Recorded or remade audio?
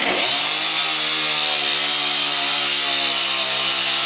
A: recorded